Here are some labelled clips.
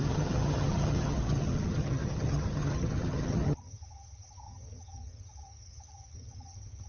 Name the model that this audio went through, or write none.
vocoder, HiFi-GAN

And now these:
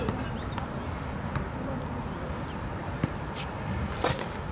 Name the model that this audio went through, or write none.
none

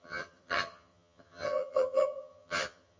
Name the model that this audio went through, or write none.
vocoder, HiFi-GAN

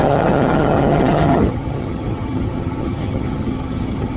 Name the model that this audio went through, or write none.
vocoder, HiFi-GAN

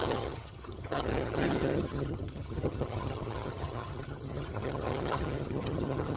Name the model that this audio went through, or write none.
vocoder, HiFi-GAN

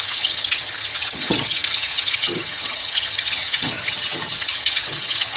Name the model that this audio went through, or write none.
vocoder, HiFi-GAN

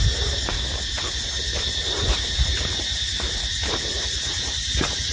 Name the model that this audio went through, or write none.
none